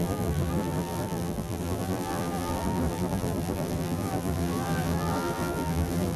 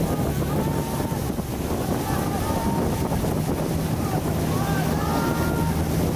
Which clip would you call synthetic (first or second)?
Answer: first